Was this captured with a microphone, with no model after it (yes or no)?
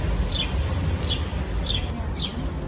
yes